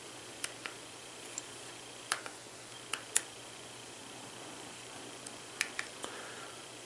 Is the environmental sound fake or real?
fake